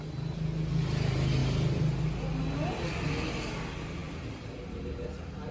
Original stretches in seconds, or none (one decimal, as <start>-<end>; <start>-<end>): 0.0-4.0